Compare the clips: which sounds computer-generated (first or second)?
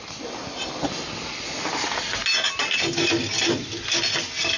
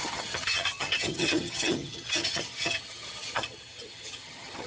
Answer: second